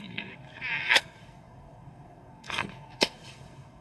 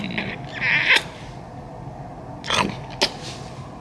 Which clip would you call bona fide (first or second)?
second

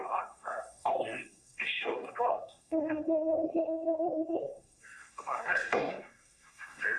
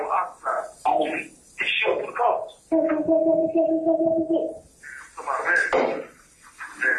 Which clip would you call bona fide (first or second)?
second